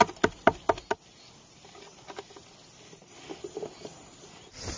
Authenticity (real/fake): real